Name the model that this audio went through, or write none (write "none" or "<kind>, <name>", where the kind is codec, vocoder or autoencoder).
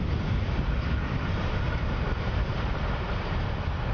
none